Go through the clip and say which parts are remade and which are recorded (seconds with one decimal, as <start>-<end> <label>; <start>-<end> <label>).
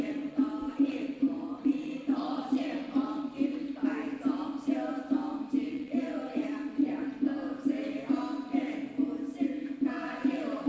0.0-3.4 remade; 3.4-5.7 recorded; 5.7-7.1 remade; 7.1-9.9 recorded; 9.9-10.7 remade